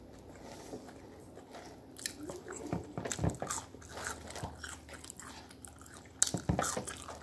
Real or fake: real